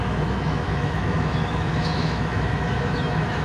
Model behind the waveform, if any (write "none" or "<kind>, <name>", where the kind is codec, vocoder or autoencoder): autoencoder, DAC-VAE